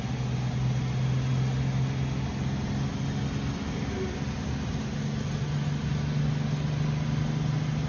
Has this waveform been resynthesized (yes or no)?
no